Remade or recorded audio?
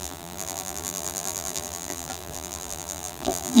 remade